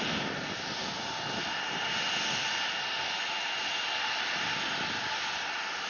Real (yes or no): yes